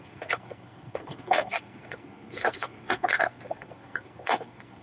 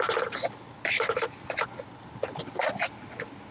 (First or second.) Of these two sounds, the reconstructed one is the first